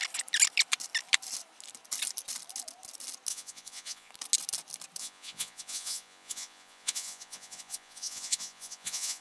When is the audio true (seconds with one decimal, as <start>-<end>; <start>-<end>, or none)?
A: 0.0-3.3; 4.1-5.0